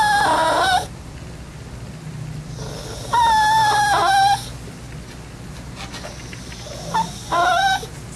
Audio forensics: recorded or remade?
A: recorded